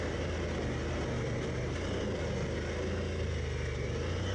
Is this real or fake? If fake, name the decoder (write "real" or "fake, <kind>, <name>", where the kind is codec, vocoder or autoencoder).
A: real